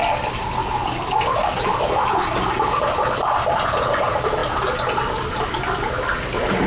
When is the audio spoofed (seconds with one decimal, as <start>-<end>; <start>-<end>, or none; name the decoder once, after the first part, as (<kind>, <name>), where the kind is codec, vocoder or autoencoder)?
none

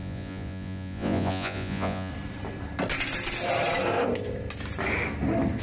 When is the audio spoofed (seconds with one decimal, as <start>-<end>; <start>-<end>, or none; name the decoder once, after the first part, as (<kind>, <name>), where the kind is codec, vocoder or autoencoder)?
0.0-2.1 (vocoder, Vocos)

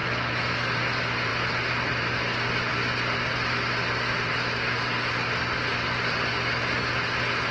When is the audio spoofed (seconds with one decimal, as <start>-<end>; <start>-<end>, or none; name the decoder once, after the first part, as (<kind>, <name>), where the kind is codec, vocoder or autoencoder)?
0.0-0.7 (autoencoder, DAC-VAE)

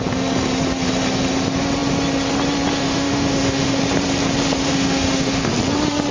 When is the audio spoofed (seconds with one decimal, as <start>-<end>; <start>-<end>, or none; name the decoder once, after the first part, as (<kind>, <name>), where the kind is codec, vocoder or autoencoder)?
2.8-3.8 (autoencoder, DAC-VAE); 4.6-5.5

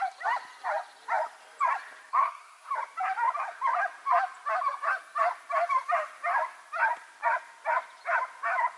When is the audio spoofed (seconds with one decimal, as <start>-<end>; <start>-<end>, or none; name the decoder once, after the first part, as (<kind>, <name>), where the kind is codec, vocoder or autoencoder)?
2.1-2.7 (codec, SNAC)

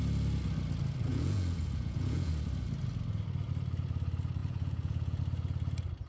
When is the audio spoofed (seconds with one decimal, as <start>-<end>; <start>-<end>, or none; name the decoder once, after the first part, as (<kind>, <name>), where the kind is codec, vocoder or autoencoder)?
1.1-2.3 (vocoder, Vocos); 4.4-5.2

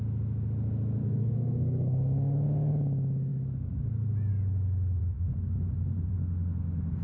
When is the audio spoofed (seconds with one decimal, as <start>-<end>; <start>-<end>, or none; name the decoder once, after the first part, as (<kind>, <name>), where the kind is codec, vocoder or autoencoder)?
1.0-2.7 (codec, SNAC)